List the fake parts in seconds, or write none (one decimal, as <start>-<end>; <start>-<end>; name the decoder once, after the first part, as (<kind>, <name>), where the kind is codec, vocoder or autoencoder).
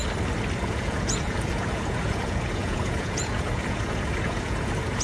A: 0.6-5.0 (vocoder, Vocos)